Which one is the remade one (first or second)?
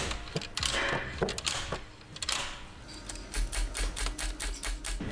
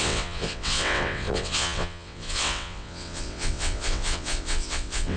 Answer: second